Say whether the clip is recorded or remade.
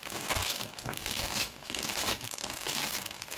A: remade